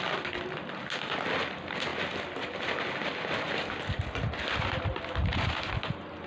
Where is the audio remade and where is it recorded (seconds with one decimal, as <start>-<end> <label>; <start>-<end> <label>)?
0.0-6.3 recorded